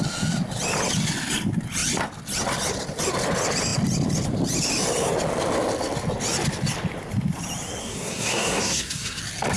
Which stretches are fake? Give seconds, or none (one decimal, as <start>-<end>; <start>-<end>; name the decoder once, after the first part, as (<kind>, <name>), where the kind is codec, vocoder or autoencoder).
7.8-9.2 (codec, SNAC)